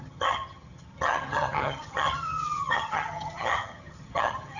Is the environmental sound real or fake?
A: fake